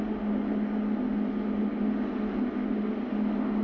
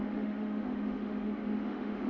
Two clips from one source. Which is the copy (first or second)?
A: second